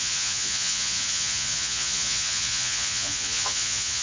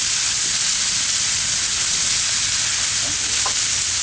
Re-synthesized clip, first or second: first